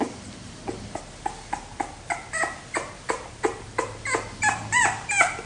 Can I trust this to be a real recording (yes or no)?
yes